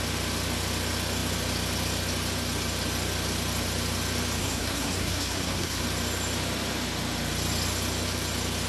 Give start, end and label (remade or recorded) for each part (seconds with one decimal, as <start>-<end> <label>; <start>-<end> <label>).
0.0-4.4 recorded; 4.4-5.8 remade; 5.8-8.7 recorded